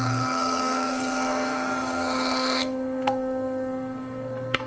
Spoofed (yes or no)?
yes